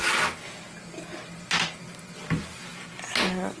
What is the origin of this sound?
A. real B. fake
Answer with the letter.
A